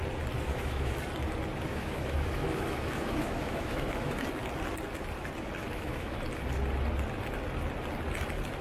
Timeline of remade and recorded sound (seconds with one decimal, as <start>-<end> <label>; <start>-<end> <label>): 0.0-0.5 recorded; 0.5-1.0 remade; 1.0-1.7 recorded; 1.7-4.2 remade; 4.2-5.6 recorded; 5.6-6.2 remade; 6.2-8.6 recorded